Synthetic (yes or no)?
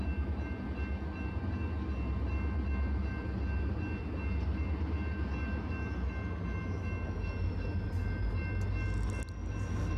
no